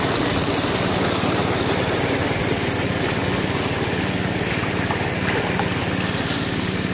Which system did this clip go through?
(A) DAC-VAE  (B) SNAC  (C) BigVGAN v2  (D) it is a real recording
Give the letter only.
D